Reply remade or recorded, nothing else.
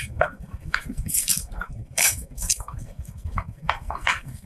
remade